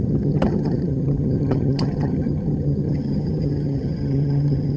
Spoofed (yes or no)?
yes